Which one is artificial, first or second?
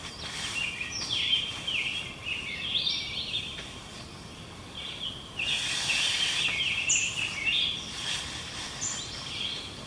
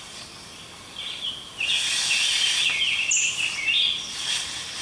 first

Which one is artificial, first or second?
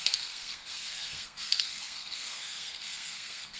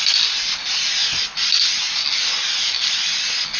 first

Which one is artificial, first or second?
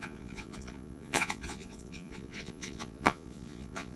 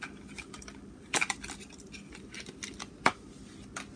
first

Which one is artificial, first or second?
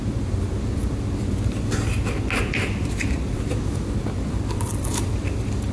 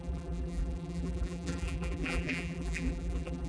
second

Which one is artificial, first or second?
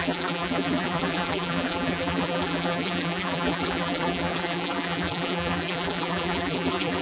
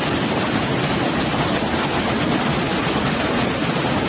first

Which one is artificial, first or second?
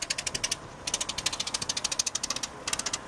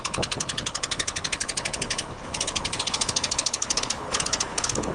second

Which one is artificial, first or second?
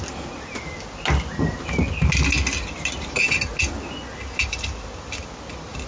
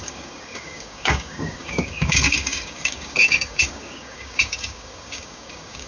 second